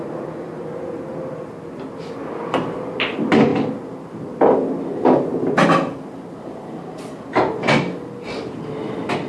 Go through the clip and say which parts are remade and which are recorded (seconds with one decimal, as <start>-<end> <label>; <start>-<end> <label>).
0.0-9.3 recorded